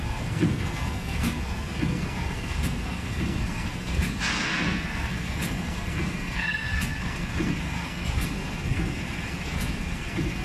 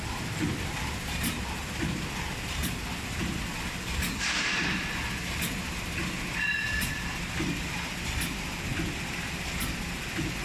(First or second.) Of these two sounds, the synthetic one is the first